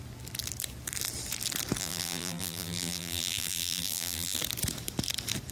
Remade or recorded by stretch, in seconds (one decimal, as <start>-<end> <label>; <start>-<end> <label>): 0.0-1.8 recorded; 1.8-4.4 remade; 4.4-5.5 recorded

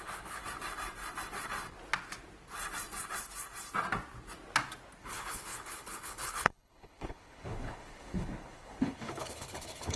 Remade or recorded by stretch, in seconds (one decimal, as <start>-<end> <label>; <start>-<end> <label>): 0.0-0.4 remade; 0.4-5.0 recorded; 5.0-10.0 remade

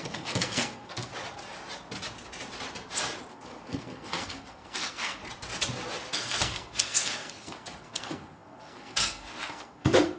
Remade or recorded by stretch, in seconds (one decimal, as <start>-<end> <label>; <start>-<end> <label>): 0.0-1.1 remade; 1.1-3.3 recorded; 3.3-5.2 remade; 5.2-6.1 recorded; 6.1-10.2 remade

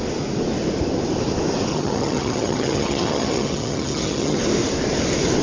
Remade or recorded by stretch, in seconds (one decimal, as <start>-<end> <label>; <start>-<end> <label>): 0.0-1.7 recorded; 1.7-4.4 remade; 4.4-5.4 recorded

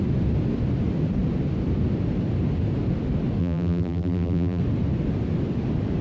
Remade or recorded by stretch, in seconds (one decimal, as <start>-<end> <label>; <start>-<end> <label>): 0.0-3.4 recorded; 3.4-4.6 remade; 4.6-6.0 recorded

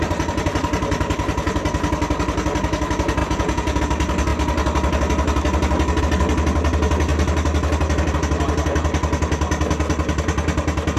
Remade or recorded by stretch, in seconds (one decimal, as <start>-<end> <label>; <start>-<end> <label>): 0.0-3.2 recorded; 3.2-3.8 remade; 3.8-11.0 recorded

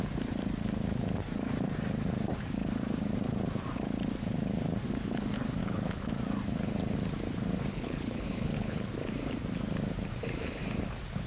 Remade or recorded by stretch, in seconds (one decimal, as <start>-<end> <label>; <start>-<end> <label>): 0.0-5.6 recorded; 5.6-6.1 remade; 6.1-7.7 recorded; 7.7-8.9 remade; 8.9-11.3 recorded